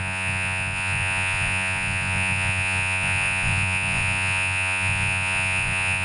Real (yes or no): no